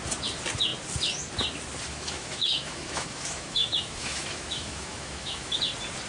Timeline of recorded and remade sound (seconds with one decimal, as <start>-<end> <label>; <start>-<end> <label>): 0.0-1.9 recorded; 1.9-5.6 remade; 5.6-6.1 recorded